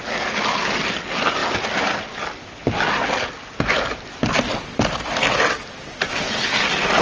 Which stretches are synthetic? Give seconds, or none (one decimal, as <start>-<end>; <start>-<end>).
none